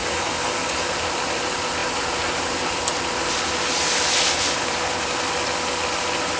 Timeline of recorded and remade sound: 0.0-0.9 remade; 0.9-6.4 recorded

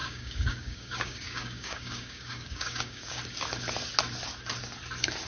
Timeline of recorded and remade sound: 0.0-3.2 remade; 3.2-5.3 recorded

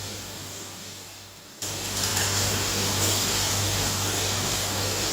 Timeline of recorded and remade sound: 0.0-5.1 remade

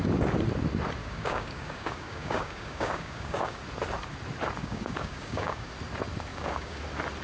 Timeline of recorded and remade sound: 0.0-1.0 recorded; 1.0-3.6 remade; 3.6-4.6 recorded; 4.6-5.7 remade; 5.7-6.3 recorded; 6.3-6.8 remade; 6.8-7.2 recorded